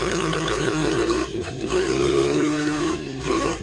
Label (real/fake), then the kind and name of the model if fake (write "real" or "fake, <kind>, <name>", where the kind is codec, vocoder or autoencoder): fake, codec, SNAC